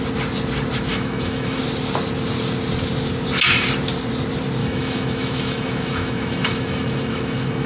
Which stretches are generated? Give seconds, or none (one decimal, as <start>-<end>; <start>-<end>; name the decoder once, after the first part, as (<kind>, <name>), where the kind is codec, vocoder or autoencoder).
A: 0.9-1.6 (autoencoder, DAC-VAE); 4.6-7.7